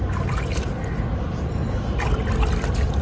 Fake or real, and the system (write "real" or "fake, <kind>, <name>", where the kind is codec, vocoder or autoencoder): real